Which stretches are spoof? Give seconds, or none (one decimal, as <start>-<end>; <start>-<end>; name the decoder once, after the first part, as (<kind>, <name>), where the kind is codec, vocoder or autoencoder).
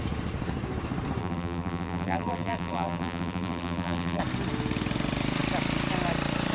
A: 1.2-4.2 (vocoder, BigVGAN v2)